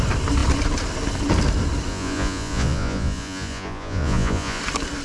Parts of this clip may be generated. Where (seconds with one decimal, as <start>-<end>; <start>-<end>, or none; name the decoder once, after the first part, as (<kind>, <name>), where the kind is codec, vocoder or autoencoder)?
1.9-4.6 (vocoder, Vocos)